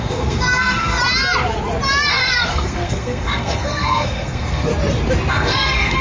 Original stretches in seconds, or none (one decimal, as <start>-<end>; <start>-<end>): 1.0-2.1; 4.7-5.3